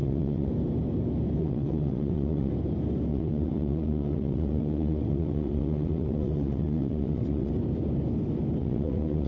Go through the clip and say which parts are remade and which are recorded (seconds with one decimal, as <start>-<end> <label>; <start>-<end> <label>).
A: 0.0-0.5 remade; 0.5-1.4 recorded; 1.4-2.5 remade; 2.5-3.1 recorded; 3.1-7.5 remade; 7.5-8.6 recorded; 8.6-9.3 remade